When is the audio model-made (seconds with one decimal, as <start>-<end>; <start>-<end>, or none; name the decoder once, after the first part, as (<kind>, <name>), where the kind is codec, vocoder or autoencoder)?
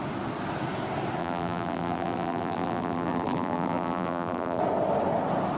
1.2-4.6 (vocoder, BigVGAN v2)